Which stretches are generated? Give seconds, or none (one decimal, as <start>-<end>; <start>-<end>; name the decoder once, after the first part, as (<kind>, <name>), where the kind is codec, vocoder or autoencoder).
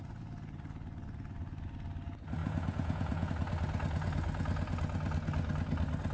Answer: 2.4-3.3 (vocoder, Vocos)